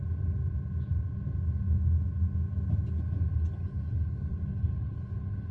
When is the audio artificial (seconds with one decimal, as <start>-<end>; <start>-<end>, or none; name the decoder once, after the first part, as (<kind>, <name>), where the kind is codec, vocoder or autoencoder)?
3.6-5.5 (codec, HILCodec)